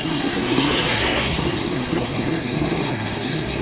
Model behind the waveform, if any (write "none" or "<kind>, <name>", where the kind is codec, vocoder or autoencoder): codec, SNAC